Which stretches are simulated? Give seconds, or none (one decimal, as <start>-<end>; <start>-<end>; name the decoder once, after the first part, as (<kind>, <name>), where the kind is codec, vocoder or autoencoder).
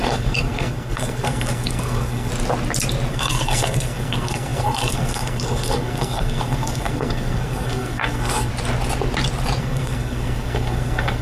0.0-2.3 (codec, SNAC); 3.1-8.5; 9.6-11.2